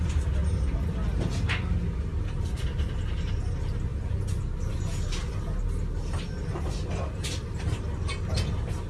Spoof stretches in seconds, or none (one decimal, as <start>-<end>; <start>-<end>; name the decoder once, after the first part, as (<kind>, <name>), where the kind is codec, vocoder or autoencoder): none

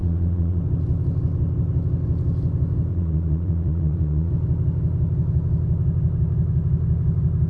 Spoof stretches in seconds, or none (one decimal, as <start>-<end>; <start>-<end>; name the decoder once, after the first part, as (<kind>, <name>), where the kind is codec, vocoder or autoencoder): 0.0-0.6 (vocoder, Vocos); 2.9-4.3

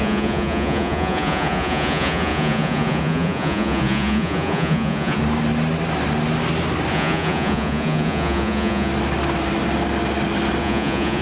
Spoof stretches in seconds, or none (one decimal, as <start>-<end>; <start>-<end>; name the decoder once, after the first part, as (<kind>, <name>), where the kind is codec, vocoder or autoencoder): 0.0-5.2 (vocoder, Vocos); 6.9-8.9; 10.6-11.2